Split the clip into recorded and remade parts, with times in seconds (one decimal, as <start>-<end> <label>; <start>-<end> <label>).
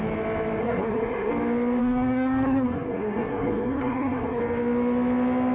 0.0-0.6 recorded; 0.6-1.3 remade; 1.3-1.8 recorded; 1.8-4.4 remade; 4.4-5.5 recorded